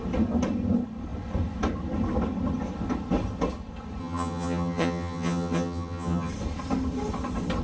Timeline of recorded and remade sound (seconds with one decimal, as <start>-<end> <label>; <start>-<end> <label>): 0.0-4.0 recorded; 4.0-6.3 remade; 6.3-7.6 recorded